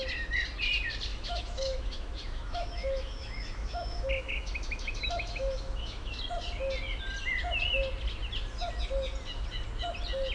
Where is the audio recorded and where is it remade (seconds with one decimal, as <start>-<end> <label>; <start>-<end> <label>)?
0.0-1.1 recorded; 1.1-6.2 remade; 6.2-10.3 recorded